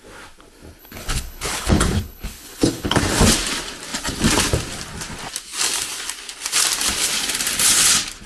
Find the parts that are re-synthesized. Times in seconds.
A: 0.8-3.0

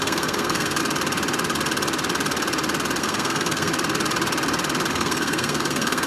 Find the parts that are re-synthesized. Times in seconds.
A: 0.0-0.8; 3.0-3.7; 4.9-6.1